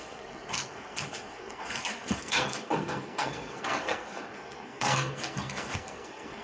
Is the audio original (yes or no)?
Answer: no